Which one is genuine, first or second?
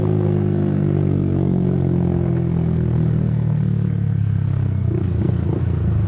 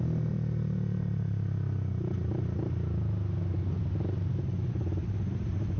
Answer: second